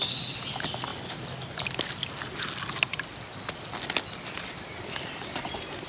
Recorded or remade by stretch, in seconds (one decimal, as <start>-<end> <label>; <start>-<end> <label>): 0.0-0.9 remade; 0.9-4.4 recorded; 4.4-5.9 remade